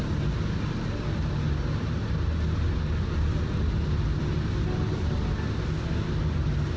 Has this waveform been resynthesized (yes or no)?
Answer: no